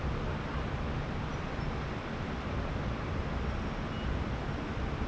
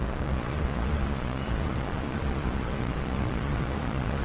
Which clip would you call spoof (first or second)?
second